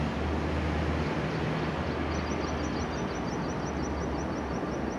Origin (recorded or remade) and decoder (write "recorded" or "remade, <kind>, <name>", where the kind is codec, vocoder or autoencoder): recorded